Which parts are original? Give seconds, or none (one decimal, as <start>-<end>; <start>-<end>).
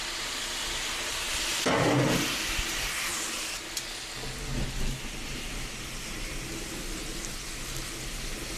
0.0-8.6